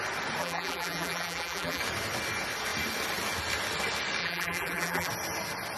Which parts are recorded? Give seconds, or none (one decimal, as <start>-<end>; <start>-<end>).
0.0-0.4; 1.8-4.2; 5.1-5.8